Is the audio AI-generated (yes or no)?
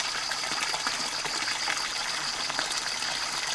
no